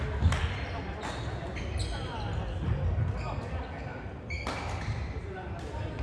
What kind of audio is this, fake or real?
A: real